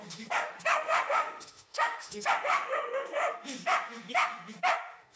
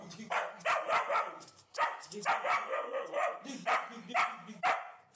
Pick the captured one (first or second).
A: second